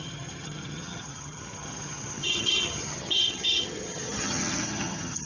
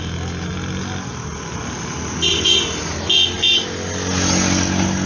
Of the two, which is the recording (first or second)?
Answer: second